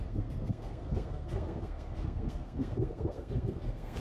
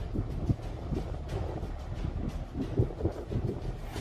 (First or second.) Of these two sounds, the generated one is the first